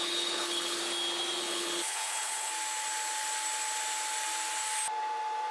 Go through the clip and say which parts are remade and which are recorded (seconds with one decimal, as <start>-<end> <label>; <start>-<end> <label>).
0.0-0.8 remade; 0.8-1.4 recorded; 1.4-2.5 remade; 2.5-5.5 recorded